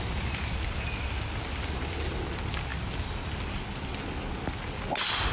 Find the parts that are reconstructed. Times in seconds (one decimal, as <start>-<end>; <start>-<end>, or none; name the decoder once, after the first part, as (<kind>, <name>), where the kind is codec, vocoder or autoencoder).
none